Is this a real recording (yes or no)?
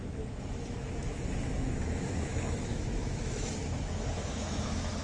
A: no